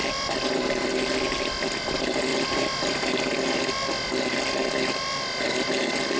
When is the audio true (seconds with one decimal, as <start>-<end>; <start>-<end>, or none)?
0.0-6.2